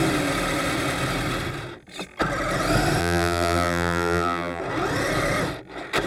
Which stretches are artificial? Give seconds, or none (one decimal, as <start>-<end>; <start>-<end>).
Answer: 3.0-4.6